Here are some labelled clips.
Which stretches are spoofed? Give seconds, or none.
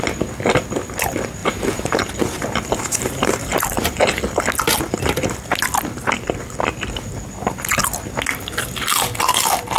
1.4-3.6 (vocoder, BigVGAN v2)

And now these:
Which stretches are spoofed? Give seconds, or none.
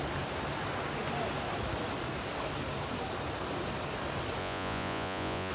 4.4-5.5 (vocoder, Vocos)